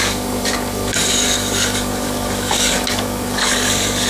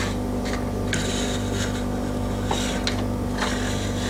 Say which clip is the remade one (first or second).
first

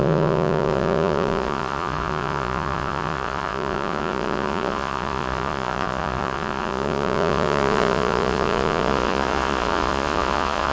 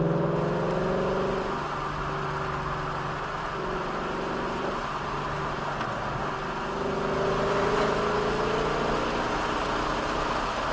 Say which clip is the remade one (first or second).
first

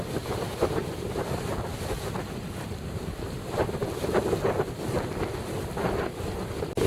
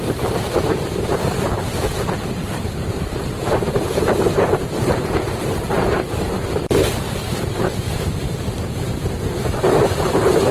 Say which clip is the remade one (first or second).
second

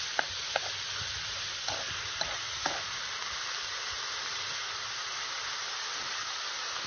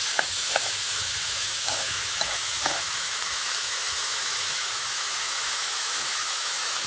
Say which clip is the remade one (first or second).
second